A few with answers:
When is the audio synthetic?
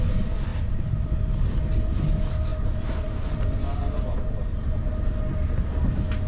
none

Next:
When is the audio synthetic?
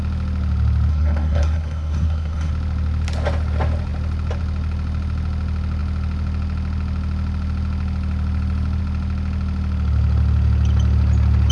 0.9-2.5 (codec, SNAC)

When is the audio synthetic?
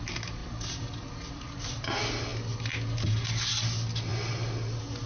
none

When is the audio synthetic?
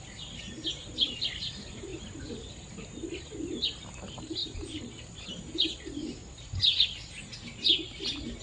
1.9-2.5 (vocoder, BigVGAN v2); 4.4-5.2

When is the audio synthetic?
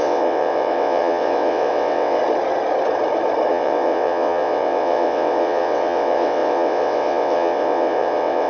0.0-2.2 (vocoder, WaveNeXt); 3.5-8.5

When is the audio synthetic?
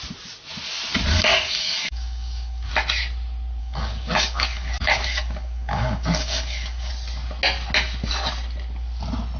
1.1-2.7 (codec, DAC); 3.6-6.9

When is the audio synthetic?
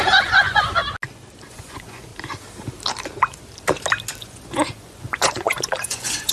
0.0-0.8 (vocoder, Vocos); 1.5-2.1; 4.2-6.3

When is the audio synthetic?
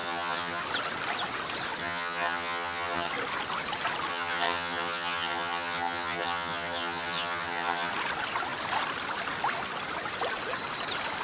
0.0-0.6 (vocoder, HiFi-GAN); 1.8-3.1; 4.1-7.9